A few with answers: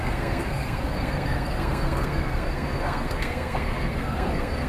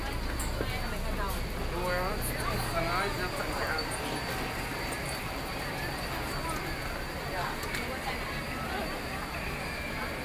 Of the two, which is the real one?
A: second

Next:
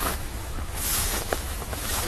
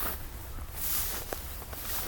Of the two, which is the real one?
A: second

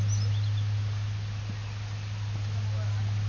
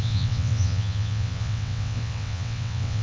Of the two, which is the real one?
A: first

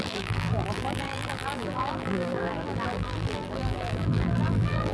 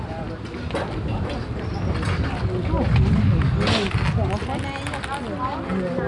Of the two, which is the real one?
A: second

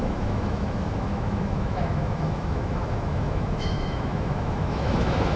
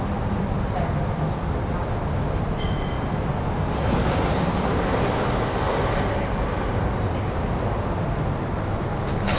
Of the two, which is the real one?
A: second